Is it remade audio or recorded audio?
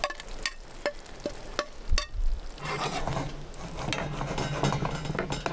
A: recorded